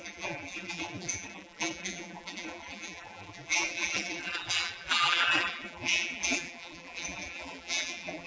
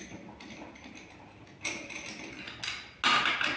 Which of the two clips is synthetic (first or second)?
first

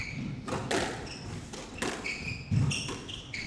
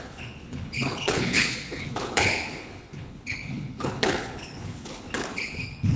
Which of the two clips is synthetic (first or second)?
second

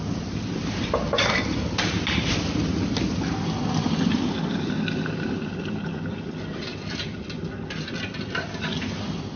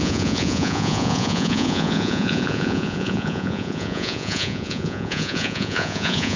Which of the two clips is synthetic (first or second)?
second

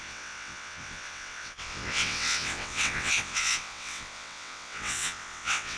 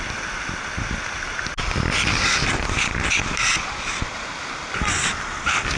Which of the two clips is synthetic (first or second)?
first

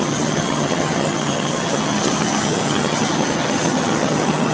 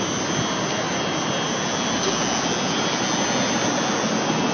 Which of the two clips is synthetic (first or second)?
first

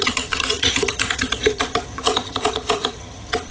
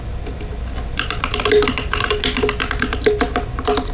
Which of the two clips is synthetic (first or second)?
first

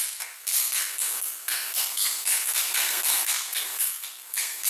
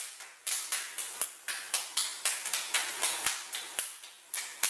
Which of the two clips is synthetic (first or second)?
first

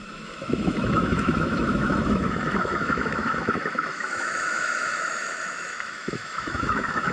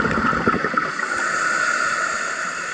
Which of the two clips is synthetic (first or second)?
first